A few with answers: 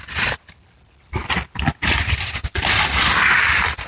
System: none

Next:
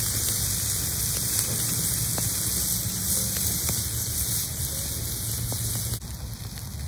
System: none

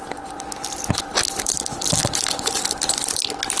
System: none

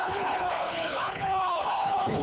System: codec, HILCodec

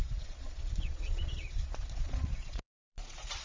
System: vocoder, Vocos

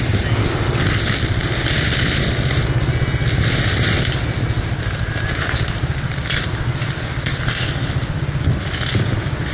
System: none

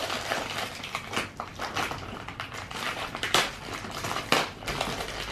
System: vocoder, BigVGAN v2